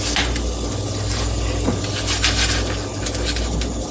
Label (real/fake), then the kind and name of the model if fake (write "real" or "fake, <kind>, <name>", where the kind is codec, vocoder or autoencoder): real